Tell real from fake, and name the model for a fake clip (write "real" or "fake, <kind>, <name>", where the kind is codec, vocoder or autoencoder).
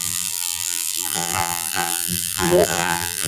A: fake, vocoder, BigVGAN v2